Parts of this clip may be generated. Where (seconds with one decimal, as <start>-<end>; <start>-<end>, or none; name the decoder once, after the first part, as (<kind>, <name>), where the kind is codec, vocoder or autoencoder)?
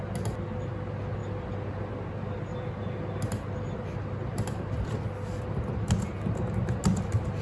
none